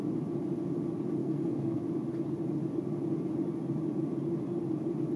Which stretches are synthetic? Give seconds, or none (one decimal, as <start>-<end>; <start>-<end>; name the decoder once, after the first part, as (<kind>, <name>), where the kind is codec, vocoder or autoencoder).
1.2-1.8 (codec, SNAC)